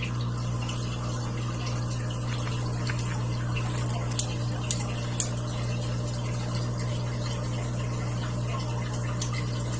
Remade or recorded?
recorded